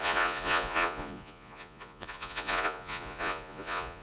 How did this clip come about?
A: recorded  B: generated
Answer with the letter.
B